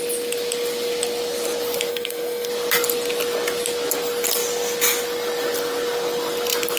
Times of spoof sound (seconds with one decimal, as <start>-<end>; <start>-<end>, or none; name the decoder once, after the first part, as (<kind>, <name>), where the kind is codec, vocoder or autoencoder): 1.9-2.5 (codec, SNAC)